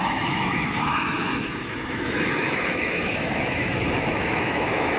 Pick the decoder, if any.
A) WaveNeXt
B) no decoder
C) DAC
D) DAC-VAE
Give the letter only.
D